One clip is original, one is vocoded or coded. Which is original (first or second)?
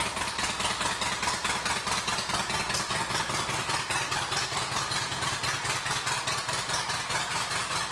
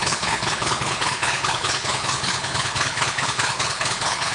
first